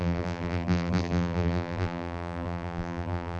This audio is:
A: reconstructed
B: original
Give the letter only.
A